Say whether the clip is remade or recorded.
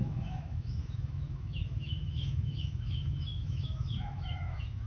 remade